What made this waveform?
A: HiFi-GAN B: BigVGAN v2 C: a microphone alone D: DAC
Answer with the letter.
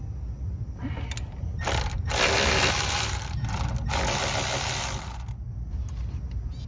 C